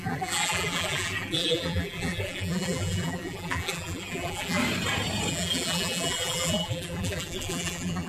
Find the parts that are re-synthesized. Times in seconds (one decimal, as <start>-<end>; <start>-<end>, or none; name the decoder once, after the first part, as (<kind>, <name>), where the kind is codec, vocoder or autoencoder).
0.0-4.6 (vocoder, BigVGAN v2); 5.3-8.1